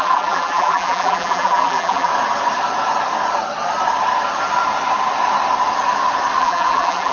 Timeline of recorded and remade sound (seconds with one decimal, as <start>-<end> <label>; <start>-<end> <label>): 0.0-2.1 remade; 2.1-6.4 recorded; 6.4-7.1 remade